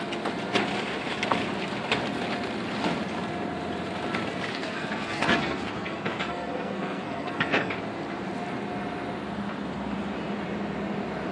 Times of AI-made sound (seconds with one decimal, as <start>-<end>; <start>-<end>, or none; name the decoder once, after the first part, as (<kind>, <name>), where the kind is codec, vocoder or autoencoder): 4.5-7.7 (codec, SNAC)